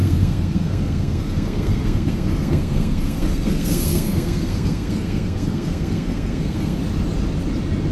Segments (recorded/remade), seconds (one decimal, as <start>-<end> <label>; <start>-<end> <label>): 0.0-6.8 remade; 6.8-7.9 recorded